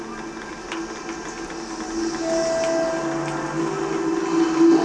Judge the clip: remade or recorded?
recorded